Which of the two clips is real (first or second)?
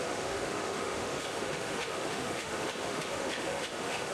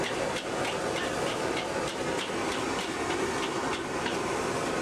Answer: second